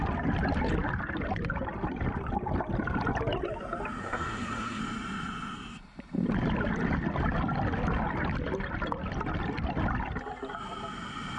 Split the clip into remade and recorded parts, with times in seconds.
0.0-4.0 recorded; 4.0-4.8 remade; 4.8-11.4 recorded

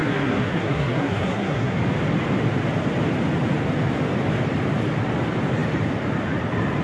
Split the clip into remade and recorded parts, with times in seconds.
0.0-1.8 remade; 1.8-6.8 recorded

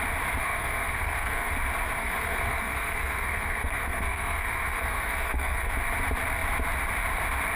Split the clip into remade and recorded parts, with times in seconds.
0.0-0.4 recorded; 0.4-1.5 remade; 1.5-2.0 recorded; 2.0-5.7 remade; 5.7-7.6 recorded

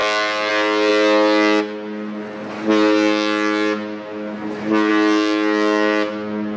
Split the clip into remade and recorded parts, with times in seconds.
0.0-6.6 recorded

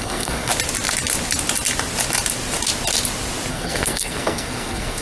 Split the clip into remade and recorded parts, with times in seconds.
0.0-0.5 remade; 0.5-3.5 recorded; 3.5-5.0 remade

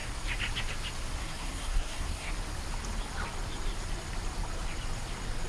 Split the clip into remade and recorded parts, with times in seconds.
0.0-1.2 recorded; 1.2-2.3 remade; 2.3-5.5 recorded